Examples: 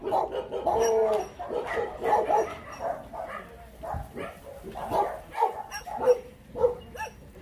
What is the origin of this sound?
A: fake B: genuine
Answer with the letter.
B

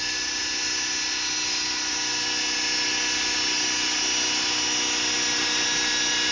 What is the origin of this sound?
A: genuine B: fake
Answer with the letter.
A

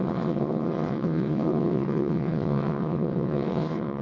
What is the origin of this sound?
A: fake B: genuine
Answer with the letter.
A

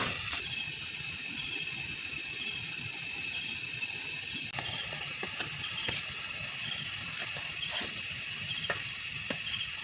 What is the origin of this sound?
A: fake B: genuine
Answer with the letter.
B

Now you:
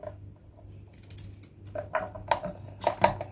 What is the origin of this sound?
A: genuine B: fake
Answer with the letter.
A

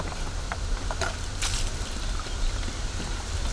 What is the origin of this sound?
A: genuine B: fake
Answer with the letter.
A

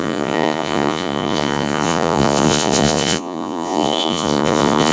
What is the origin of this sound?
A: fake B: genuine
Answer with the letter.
A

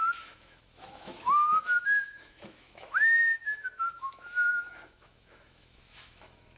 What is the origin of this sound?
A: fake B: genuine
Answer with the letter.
A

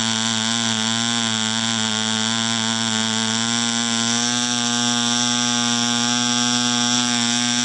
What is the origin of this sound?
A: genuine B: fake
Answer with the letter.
A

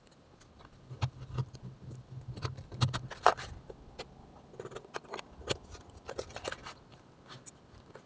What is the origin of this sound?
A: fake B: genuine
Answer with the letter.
B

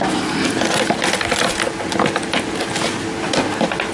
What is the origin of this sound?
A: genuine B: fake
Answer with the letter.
A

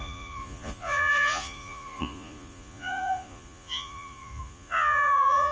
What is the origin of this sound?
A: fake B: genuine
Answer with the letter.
A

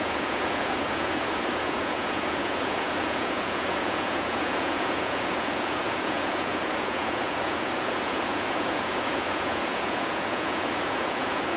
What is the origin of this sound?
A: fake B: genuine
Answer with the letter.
A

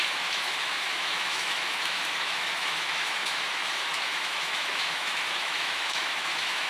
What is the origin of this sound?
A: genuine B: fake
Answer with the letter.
B